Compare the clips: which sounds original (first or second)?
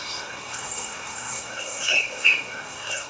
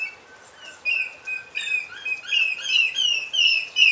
second